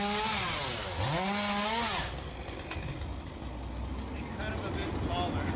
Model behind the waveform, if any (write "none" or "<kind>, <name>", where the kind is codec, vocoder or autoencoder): none